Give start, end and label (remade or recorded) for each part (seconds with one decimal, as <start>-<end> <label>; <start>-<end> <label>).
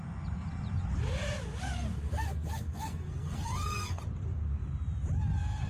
0.0-1.9 recorded; 1.9-4.0 remade; 4.0-5.7 recorded